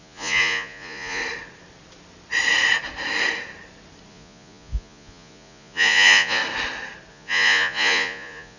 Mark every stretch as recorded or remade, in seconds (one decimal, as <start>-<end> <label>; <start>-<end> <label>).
0.0-1.2 remade; 1.2-4.1 recorded; 4.1-6.4 remade; 6.4-7.1 recorded; 7.1-8.6 remade